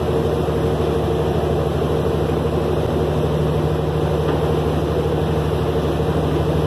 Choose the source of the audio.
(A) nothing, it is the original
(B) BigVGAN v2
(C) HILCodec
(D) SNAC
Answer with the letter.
A